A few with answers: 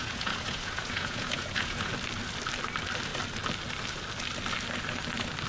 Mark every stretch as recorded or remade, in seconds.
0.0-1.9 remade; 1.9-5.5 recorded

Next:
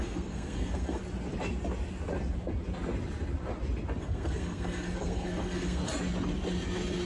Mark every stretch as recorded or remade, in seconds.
0.0-1.0 remade; 1.0-4.0 recorded; 4.0-5.8 remade; 5.8-7.1 recorded

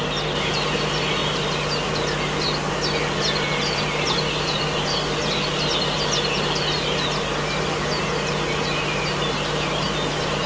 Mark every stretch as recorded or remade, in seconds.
0.0-10.5 recorded

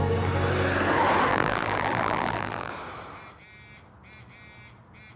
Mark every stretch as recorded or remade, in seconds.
0.0-1.3 recorded; 1.3-2.7 remade; 2.7-5.2 recorded